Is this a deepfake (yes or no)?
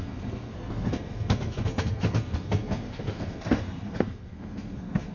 yes